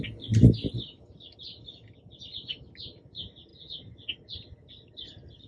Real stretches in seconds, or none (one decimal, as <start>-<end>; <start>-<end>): 0.0-5.5